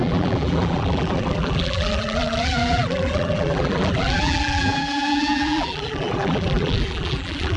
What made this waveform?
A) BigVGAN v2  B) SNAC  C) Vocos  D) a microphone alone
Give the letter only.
A